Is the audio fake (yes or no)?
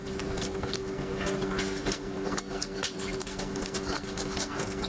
yes